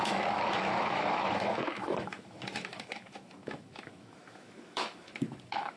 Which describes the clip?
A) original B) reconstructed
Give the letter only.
B